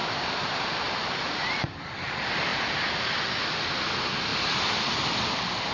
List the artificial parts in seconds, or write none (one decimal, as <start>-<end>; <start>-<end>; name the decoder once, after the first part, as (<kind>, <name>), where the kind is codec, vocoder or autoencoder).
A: 0.0-1.8 (vocoder, BigVGAN v2); 2.5-3.3; 4.3-4.8